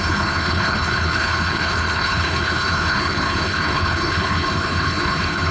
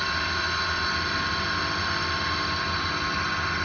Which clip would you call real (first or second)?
second